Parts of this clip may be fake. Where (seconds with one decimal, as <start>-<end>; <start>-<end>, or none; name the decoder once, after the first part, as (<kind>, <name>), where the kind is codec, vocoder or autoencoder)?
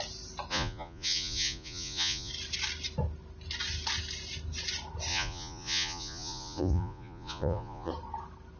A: 0.5-2.3 (vocoder, Vocos); 5.1-7.9